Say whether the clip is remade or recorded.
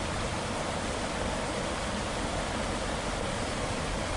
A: recorded